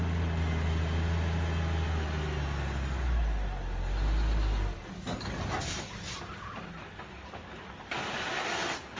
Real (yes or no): yes